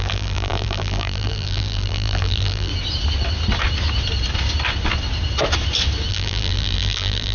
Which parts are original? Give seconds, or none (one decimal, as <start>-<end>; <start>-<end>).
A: 2.7-6.1